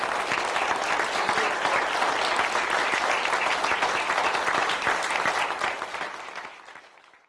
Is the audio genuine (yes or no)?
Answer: yes